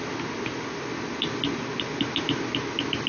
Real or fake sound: real